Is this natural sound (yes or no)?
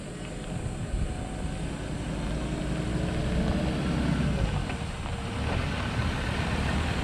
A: yes